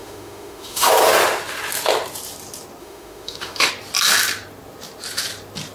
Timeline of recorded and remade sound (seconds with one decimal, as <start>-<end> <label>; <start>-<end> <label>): 0.0-0.9 remade; 0.9-2.8 recorded; 2.8-3.7 remade; 3.7-5.7 recorded

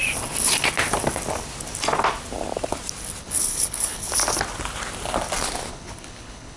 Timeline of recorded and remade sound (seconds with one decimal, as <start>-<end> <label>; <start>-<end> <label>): 0.0-3.2 recorded; 3.2-4.1 remade; 4.1-5.7 recorded; 5.7-6.6 remade